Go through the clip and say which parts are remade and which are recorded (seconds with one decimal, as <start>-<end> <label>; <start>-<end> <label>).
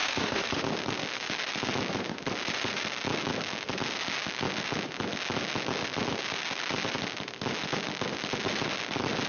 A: 0.0-0.6 remade; 0.6-9.3 recorded